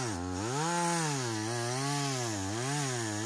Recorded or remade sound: recorded